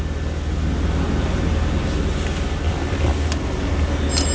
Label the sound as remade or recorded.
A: recorded